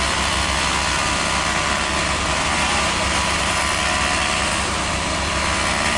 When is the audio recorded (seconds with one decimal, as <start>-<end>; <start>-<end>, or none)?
0.0-2.0; 3.6-6.0